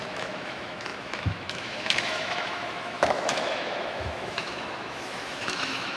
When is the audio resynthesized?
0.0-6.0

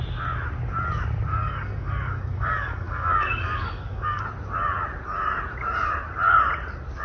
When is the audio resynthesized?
1.3-4.2

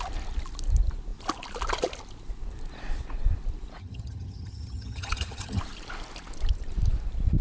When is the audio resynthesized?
3.8-5.6

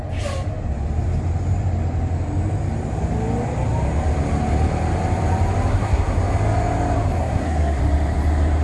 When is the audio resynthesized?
5.7-6.2; 7.2-7.8